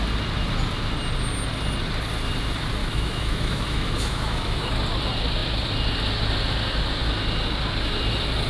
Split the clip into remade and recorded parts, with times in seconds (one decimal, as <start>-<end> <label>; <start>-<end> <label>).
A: 0.0-2.8 recorded; 2.8-4.7 remade; 4.7-8.5 recorded